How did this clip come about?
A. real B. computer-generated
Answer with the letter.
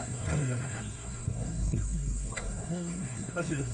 B